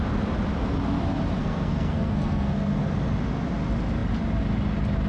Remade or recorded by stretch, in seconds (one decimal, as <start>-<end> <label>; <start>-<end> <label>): 0.0-1.4 recorded; 1.4-2.8 remade; 2.8-5.1 recorded